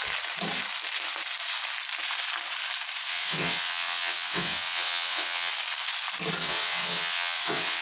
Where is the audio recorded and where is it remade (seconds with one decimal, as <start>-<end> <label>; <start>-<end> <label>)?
0.0-3.1 recorded; 3.1-5.5 remade; 5.5-6.4 recorded; 6.4-7.8 remade